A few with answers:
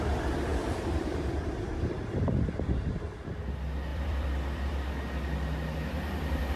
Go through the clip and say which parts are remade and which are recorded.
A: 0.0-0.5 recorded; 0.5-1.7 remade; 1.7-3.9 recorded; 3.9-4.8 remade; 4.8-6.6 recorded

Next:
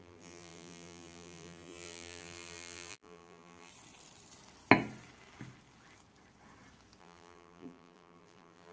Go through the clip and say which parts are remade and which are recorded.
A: 0.0-3.7 remade; 3.7-7.0 recorded; 7.0-8.7 remade

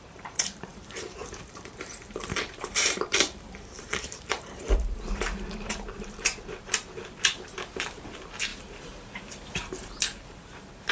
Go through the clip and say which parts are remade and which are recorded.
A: 0.0-6.3 remade; 6.3-7.1 recorded; 7.1-10.9 remade

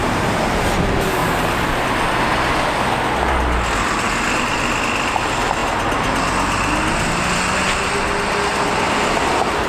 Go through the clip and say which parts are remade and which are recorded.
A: 0.0-1.2 remade; 1.2-5.1 recorded; 5.1-5.6 remade; 5.6-9.7 recorded

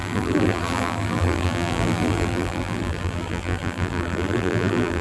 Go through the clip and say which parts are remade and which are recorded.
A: 0.0-5.0 remade